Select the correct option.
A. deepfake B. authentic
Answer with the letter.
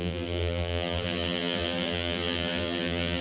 A